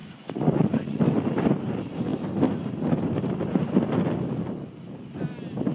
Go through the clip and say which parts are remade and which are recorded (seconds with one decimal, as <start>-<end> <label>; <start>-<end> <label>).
0.0-1.0 remade; 1.0-5.7 recorded